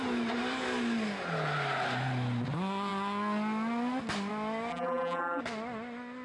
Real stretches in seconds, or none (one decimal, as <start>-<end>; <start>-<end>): 0.0-4.7; 5.4-6.2